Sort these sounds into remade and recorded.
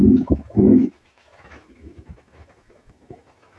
remade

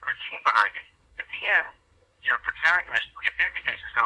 remade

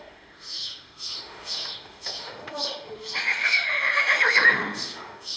remade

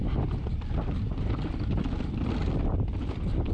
recorded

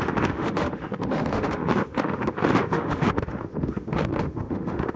remade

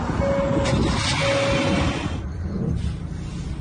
recorded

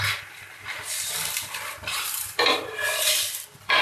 remade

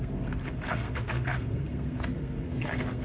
remade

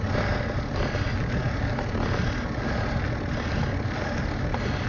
recorded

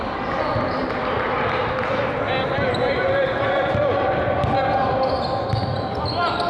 recorded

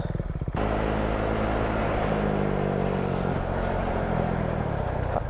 recorded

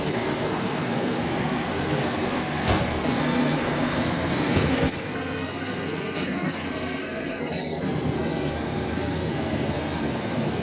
remade